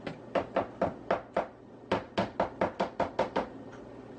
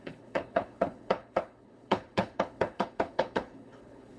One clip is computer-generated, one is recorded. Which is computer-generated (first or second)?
second